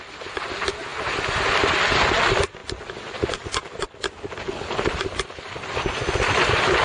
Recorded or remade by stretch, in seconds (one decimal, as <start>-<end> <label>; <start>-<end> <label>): 0.0-6.8 recorded

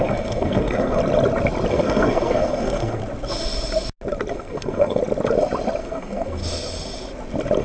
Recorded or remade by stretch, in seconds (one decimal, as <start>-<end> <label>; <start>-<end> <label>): 0.0-1.0 remade; 1.0-1.7 recorded; 1.7-3.0 remade; 3.0-4.3 recorded; 4.3-5.0 remade; 5.0-5.8 recorded; 5.8-6.4 remade; 6.4-7.6 recorded

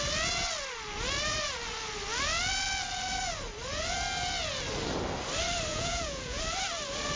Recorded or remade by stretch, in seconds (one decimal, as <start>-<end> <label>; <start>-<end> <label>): 0.0-5.7 recorded; 5.7-6.4 remade; 6.4-7.2 recorded

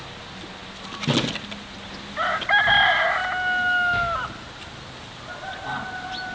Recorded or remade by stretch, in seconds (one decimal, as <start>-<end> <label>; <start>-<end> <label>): 0.0-6.3 recorded

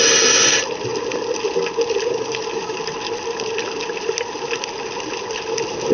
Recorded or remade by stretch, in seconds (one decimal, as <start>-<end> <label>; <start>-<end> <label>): 0.0-5.9 recorded